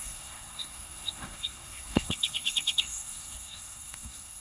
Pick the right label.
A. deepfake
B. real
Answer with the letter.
A